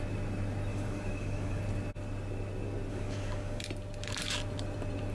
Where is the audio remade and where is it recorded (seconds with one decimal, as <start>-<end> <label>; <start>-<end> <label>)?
0.0-0.7 recorded; 0.7-1.6 remade; 1.6-2.9 recorded; 2.9-3.6 remade; 3.6-5.1 recorded